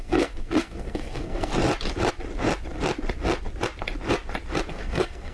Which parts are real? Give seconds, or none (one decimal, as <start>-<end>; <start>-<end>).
1.5-4.7